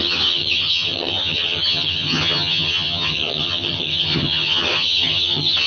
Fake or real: fake